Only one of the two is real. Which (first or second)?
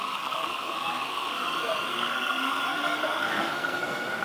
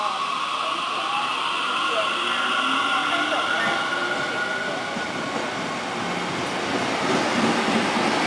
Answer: second